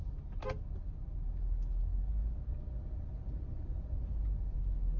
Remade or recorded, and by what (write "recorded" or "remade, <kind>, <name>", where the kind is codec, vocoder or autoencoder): recorded